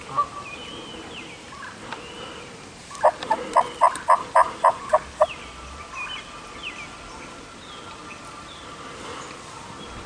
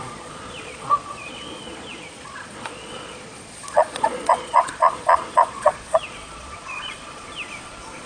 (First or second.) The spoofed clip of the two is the second